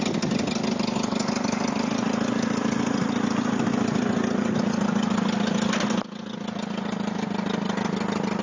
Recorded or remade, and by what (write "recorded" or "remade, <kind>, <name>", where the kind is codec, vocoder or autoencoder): recorded